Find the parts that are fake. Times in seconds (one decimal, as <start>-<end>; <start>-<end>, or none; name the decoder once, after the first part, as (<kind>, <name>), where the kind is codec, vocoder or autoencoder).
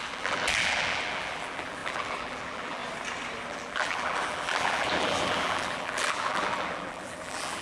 0.0-2.8 (vocoder, BigVGAN v2); 3.5-7.6